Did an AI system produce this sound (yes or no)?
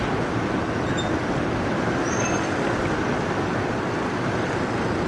no